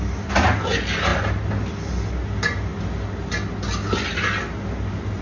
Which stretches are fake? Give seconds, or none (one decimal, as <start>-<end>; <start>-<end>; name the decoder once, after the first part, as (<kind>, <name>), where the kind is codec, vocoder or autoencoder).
none